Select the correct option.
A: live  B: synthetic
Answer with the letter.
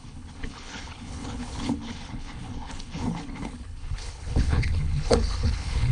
B